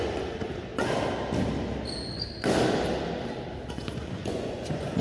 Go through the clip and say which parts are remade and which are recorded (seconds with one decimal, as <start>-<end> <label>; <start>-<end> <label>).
0.0-0.7 remade; 0.7-3.7 recorded; 3.7-5.0 remade